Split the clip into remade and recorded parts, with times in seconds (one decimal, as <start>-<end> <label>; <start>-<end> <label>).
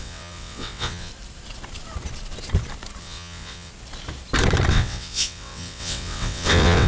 0.0-1.1 remade; 1.1-3.0 recorded; 3.0-3.7 remade; 3.7-4.7 recorded; 4.7-6.9 remade